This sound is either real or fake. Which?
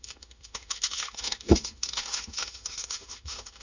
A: fake